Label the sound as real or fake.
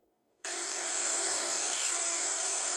fake